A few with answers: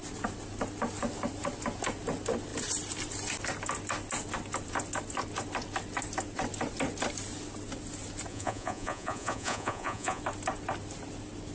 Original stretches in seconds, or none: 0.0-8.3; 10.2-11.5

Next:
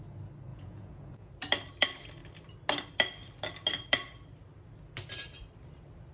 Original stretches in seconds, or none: 0.0-0.5; 1.3-6.1

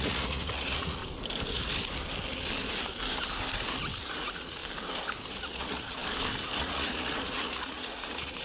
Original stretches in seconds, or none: 1.0-4.0; 4.6-5.3; 6.0-6.6

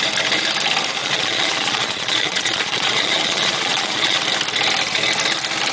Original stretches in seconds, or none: 0.0-1.0; 4.2-5.7

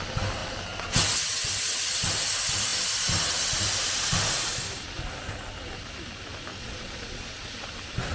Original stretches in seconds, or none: 0.0-6.5; 7.5-8.1

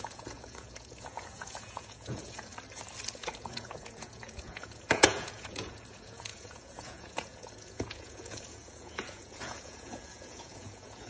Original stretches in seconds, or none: 2.5-3.1